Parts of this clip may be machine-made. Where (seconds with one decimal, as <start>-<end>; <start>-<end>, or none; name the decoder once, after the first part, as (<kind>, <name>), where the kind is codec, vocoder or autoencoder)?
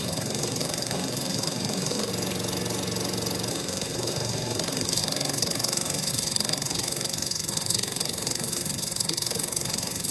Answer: 0.0-2.1 (codec, SNAC); 3.5-10.1